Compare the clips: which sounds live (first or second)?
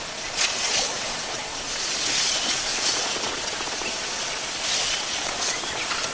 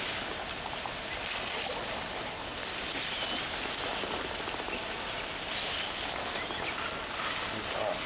second